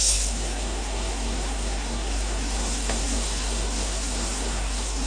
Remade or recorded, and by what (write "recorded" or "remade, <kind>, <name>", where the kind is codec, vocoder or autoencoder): remade, codec, SNAC